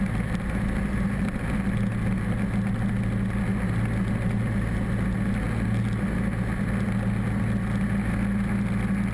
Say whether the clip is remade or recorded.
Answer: recorded